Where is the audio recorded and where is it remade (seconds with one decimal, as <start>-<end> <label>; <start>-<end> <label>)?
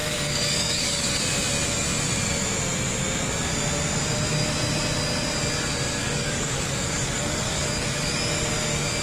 0.0-1.2 remade; 1.2-6.0 recorded; 6.0-8.1 remade; 8.1-9.0 recorded